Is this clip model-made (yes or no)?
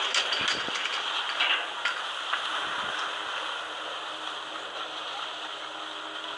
no